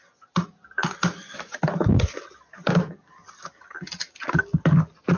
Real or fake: real